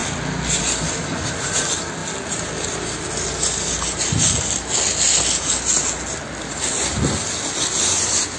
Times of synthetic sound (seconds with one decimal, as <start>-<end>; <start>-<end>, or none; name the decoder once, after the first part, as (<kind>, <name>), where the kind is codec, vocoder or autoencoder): none